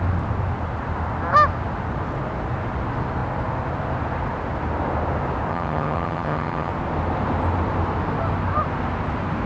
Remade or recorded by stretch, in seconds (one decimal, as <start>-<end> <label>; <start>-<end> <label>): 0.0-5.5 recorded; 5.5-6.7 remade; 6.7-9.5 recorded